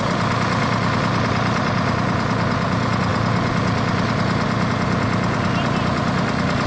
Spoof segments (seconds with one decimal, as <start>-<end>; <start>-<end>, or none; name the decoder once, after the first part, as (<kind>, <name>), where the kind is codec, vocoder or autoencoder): none

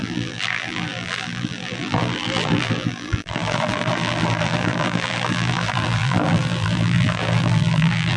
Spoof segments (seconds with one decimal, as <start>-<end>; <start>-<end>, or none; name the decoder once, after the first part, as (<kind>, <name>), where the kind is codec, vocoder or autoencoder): 0.0-8.2 (vocoder, BigVGAN v2)